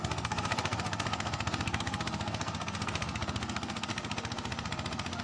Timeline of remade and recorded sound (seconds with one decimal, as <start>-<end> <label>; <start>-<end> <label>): 0.0-3.9 remade; 3.9-5.2 recorded